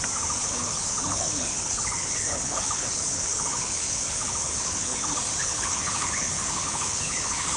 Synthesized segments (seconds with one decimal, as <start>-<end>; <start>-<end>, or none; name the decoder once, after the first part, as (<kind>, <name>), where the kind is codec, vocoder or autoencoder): 0.4-5.0 (codec, HILCodec); 5.4-7.6